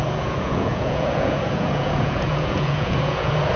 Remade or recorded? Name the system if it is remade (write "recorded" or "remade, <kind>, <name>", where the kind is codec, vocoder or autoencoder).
remade, vocoder, Vocos